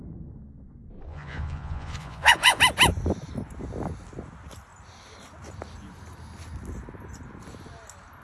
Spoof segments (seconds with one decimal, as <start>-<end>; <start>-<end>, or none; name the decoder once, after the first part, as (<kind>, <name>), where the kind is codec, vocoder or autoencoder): 1.1-2.6 (vocoder, Vocos)